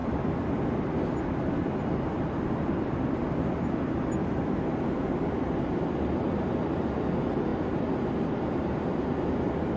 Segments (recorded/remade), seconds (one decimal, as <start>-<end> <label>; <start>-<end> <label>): 0.0-9.8 recorded